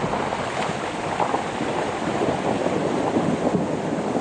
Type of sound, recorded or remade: remade